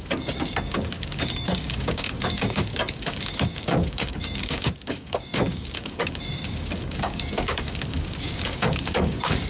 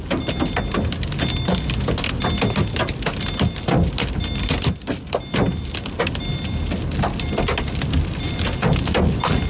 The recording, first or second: second